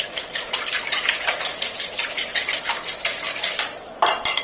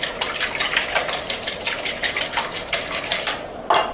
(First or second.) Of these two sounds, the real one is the second